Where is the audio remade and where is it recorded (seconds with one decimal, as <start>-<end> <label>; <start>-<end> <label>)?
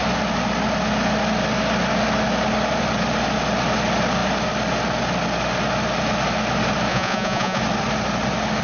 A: 0.0-6.9 recorded; 6.9-7.6 remade; 7.6-8.6 recorded